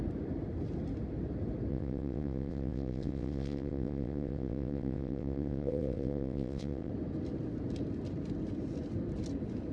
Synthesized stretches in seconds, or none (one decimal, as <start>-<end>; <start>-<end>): 1.7-6.9

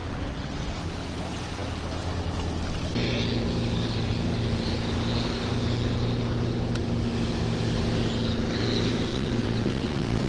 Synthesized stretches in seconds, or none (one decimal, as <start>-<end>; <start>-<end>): 0.0-0.8; 9.1-10.3